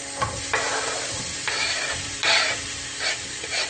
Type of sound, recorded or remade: remade